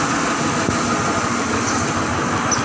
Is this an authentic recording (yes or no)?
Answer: yes